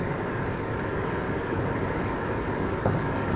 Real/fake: fake